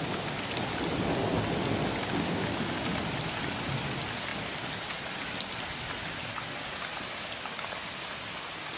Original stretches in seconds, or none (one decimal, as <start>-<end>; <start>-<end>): 0.0-2.0; 2.6-8.8